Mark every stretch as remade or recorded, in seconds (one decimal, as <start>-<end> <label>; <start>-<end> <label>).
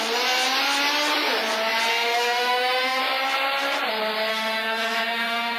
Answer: 0.0-1.9 recorded; 1.9-3.0 remade; 3.0-4.3 recorded; 4.3-5.6 remade